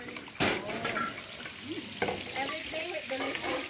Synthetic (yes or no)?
no